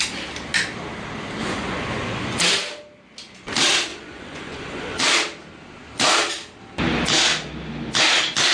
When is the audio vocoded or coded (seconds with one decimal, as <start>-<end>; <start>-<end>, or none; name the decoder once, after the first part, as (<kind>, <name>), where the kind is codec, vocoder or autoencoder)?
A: 1.4-2.4 (vocoder, Vocos); 3.9-5.0

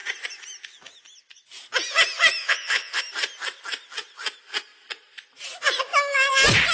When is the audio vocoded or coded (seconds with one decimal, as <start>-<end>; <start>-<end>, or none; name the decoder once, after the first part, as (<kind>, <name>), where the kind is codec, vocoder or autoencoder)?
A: 2.4-3.0 (vocoder, Vocos)

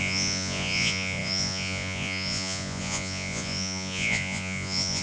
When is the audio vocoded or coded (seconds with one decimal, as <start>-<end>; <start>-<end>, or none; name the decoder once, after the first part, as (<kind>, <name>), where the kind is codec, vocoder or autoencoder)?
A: 0.0-5.0 (vocoder, Vocos)

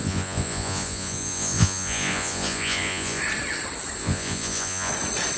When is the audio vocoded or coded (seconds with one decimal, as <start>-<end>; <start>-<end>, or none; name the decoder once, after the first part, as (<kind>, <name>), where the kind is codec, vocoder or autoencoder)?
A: 0.0-3.2 (vocoder, Vocos); 4.0-4.9

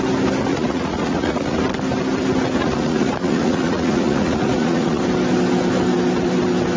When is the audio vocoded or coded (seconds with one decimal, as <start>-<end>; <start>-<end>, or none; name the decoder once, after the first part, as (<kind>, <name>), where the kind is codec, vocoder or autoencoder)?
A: 0.5-1.6 (vocoder, Vocos); 2.6-5.0

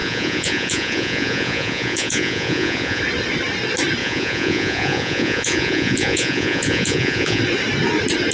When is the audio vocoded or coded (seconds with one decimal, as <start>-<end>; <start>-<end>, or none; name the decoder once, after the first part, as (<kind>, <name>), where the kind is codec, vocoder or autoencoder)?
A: 0.0-3.0 (vocoder, Vocos); 4.0-7.4